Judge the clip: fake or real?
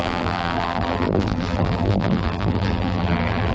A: fake